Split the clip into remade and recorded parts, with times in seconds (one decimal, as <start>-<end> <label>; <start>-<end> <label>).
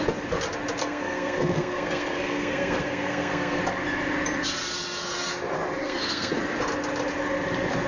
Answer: 0.0-0.8 recorded; 0.8-3.6 remade; 3.6-5.8 recorded; 5.8-6.3 remade; 6.3-7.9 recorded